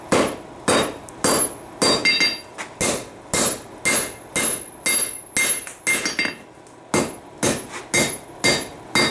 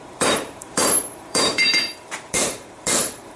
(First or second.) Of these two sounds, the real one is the first